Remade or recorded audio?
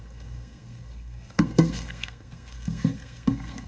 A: remade